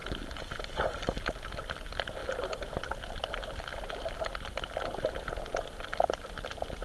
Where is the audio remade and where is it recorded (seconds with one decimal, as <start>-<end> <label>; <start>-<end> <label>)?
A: 0.0-0.6 recorded; 0.6-6.8 remade